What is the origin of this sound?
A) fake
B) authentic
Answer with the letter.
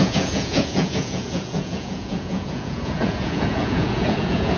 A